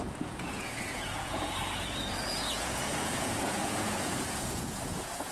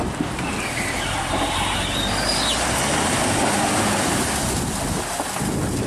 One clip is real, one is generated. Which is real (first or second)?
second